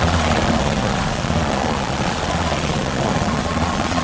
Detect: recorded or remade remade